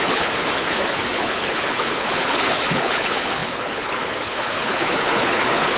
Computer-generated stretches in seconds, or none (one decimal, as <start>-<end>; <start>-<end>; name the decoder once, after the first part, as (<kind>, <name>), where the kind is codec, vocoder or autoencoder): 0.0-5.8 (codec, HILCodec)